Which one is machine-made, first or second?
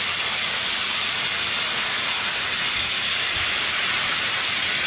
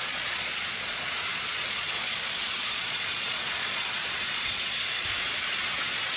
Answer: second